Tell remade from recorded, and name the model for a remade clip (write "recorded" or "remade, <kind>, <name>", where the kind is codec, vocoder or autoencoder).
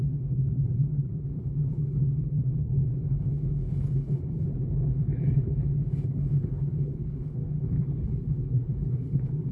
remade, codec, HILCodec